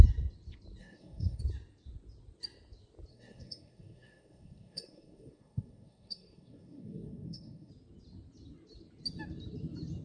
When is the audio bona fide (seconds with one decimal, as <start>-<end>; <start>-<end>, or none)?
0.0-0.8; 1.4-3.1; 7.7-10.0